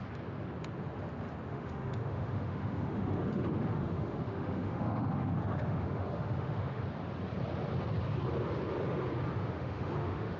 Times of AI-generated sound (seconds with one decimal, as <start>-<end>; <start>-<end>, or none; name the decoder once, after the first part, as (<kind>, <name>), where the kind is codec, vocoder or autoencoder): 1.5-6.8 (autoencoder, DAC-VAE); 9.4-10.4